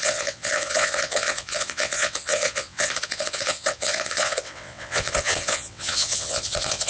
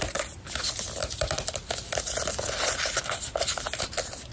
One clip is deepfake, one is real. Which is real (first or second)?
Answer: second